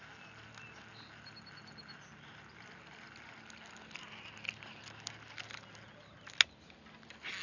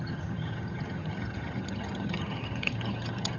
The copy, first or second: second